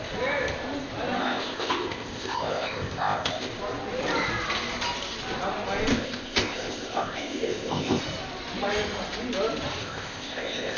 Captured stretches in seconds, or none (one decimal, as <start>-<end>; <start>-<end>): 0.0-1.2; 3.5-5.9; 8.0-9.8